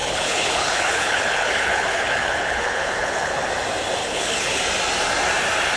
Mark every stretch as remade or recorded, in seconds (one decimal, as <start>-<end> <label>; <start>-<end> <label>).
0.0-3.5 remade; 3.5-4.0 recorded; 4.0-4.6 remade; 4.6-5.8 recorded